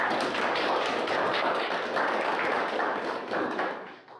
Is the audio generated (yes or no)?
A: yes